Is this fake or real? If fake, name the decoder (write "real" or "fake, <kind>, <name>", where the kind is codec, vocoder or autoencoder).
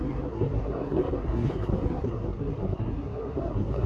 fake, codec, SNAC